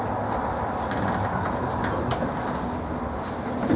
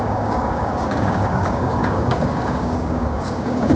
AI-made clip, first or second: second